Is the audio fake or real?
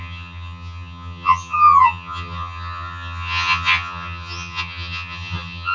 fake